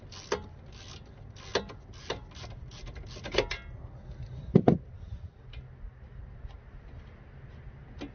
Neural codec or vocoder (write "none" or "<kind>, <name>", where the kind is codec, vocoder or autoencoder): none